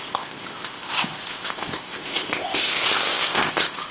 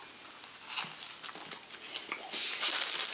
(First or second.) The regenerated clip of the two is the first